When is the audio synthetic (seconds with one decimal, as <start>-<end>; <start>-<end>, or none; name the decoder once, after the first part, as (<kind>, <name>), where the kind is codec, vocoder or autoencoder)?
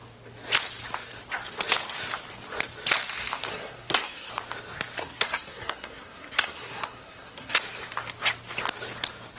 3.5-4.3 (codec, SNAC); 5.0-7.6